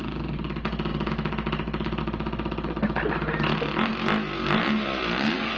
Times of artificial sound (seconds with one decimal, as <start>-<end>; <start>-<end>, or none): none